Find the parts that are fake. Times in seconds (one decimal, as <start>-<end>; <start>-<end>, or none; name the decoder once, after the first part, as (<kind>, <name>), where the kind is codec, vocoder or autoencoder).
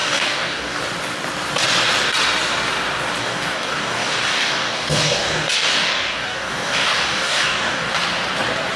0.0-0.8 (codec, DAC); 3.2-7.9